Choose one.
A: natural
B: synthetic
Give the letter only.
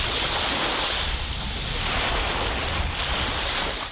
A